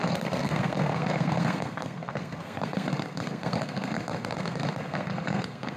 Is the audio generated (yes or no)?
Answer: yes